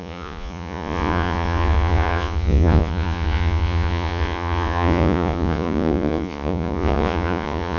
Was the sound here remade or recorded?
remade